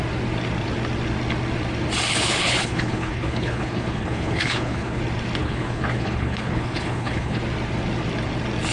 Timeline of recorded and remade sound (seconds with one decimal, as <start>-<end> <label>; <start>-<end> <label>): 0.0-2.1 recorded; 2.1-5.0 remade; 5.0-5.4 recorded; 5.4-7.4 remade; 7.4-8.7 recorded